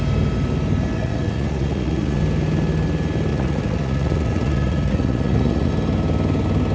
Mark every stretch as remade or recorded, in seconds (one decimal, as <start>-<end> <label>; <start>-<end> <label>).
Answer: 0.0-0.9 recorded; 0.9-2.2 remade; 2.2-3.3 recorded; 3.3-5.7 remade; 5.7-6.7 recorded

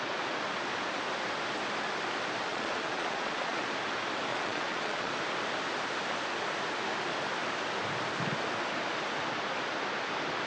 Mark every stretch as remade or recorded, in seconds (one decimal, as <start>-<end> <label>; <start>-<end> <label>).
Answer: 0.0-2.5 recorded; 2.5-3.6 remade; 3.6-4.3 recorded; 4.3-5.1 remade; 5.1-10.5 recorded

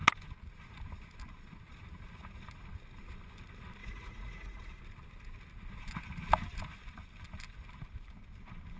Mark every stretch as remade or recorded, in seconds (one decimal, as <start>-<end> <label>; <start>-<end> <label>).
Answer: 0.0-3.8 recorded; 3.8-4.8 remade; 4.8-8.8 recorded

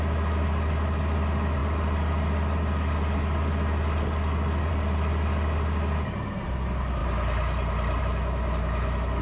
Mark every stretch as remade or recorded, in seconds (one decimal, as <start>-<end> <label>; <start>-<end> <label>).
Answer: 0.0-9.2 recorded

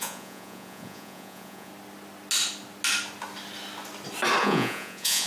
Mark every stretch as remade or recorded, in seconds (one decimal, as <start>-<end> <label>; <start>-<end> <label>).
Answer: 0.0-1.7 remade; 1.7-4.4 recorded; 4.4-5.3 remade